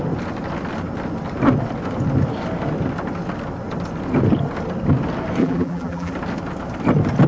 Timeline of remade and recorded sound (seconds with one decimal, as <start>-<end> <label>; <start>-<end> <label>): 0.0-5.4 recorded; 5.4-6.1 remade; 6.1-7.3 recorded